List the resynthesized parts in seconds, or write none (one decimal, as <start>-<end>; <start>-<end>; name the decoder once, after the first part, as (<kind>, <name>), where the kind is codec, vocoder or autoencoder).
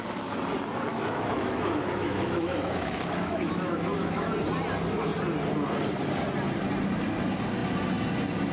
0.9-4.3 (autoencoder, DAC-VAE)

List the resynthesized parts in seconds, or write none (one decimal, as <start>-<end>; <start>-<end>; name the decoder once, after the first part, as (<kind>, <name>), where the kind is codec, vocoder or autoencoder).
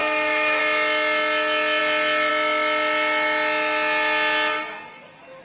0.0-0.6 (autoencoder, DAC-VAE)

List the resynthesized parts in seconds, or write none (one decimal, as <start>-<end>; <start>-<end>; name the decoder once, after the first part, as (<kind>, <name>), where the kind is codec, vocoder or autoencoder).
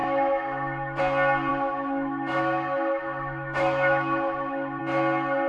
0.0-1.0 (autoencoder, DAC-VAE); 1.5-4.8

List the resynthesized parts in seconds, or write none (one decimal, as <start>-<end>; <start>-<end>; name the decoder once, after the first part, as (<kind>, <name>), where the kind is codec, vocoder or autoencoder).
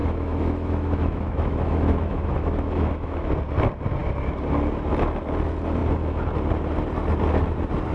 0.0-3.3 (autoencoder, DAC-VAE)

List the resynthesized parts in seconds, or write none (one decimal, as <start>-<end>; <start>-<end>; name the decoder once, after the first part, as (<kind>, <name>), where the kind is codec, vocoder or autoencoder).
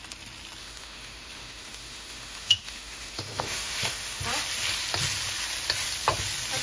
0.6-4.2 (autoencoder, DAC-VAE)